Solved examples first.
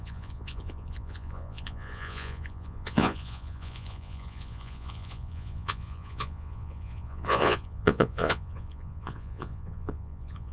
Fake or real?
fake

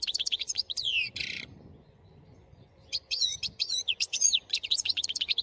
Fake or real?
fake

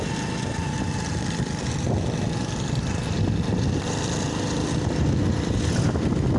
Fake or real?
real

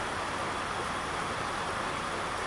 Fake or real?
real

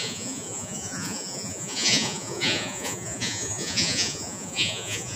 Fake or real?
fake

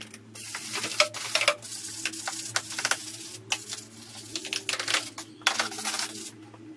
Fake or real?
real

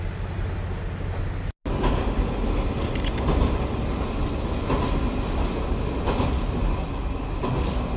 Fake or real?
real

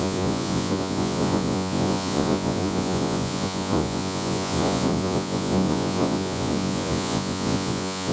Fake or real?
fake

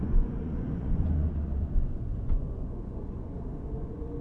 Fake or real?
fake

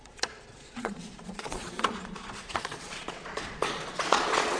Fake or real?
fake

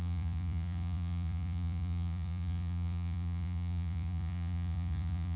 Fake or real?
fake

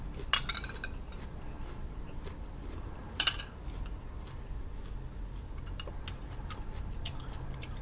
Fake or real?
real